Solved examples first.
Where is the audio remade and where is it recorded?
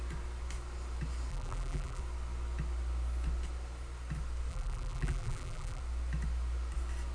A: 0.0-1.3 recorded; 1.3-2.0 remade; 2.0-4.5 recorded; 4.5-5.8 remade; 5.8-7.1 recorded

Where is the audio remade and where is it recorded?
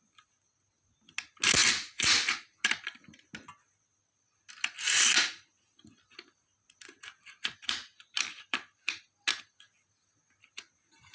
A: 0.0-8.1 recorded; 8.1-8.9 remade; 8.9-11.1 recorded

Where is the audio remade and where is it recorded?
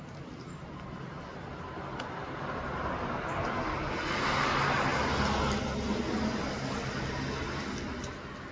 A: 0.0-8.5 recorded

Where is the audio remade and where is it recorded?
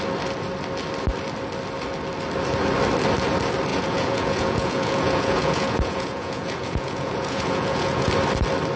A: 0.0-3.7 recorded; 3.7-8.1 remade; 8.1-8.8 recorded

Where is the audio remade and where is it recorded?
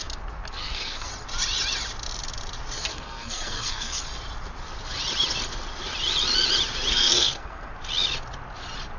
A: 0.0-0.5 recorded; 0.5-1.1 remade; 1.1-2.9 recorded; 2.9-4.0 remade; 4.0-6.9 recorded; 6.9-7.7 remade; 7.7-9.0 recorded